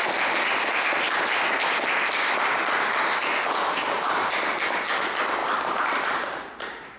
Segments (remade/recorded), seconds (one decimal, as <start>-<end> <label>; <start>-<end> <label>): 0.0-3.2 recorded; 3.2-4.5 remade; 4.5-5.4 recorded; 5.4-7.0 remade